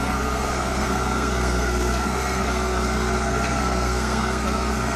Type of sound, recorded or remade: remade